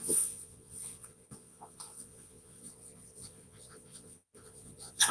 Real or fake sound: fake